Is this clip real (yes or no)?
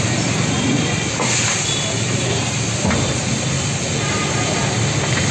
no